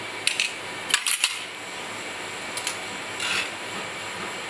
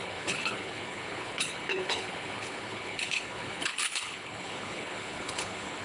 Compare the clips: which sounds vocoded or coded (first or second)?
second